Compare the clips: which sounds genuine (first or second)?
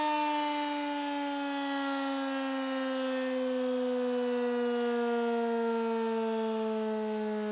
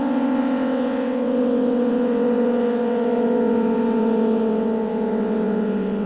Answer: first